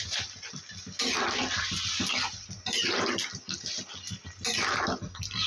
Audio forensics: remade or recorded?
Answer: recorded